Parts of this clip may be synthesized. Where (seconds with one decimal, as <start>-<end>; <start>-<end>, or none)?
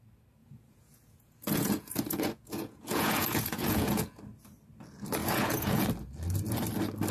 0.4-4.2; 5.2-5.8